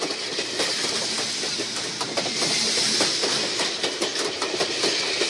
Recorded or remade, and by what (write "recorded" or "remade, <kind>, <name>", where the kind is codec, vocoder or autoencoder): recorded